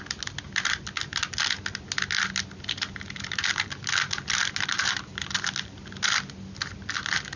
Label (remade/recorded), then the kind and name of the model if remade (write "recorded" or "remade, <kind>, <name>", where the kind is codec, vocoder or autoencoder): recorded